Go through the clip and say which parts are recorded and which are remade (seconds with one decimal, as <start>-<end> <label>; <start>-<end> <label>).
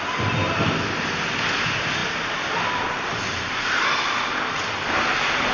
0.0-5.5 recorded